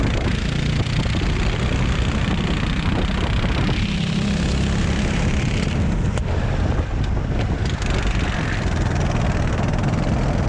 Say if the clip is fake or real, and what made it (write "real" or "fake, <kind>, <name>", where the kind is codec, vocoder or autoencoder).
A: real